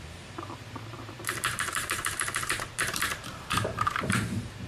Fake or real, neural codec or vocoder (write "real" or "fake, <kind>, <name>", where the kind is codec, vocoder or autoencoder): fake, vocoder, BigVGAN v2